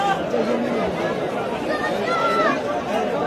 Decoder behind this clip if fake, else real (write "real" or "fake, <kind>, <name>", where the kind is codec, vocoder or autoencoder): real